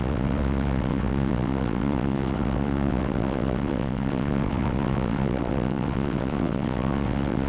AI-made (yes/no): yes